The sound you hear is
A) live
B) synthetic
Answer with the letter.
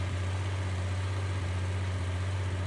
A